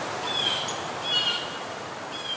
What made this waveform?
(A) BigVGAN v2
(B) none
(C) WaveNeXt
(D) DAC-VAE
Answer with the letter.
A